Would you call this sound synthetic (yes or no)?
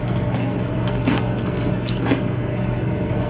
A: yes